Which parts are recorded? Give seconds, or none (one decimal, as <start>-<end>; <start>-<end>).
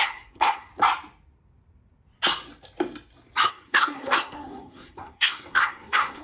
0.7-3.5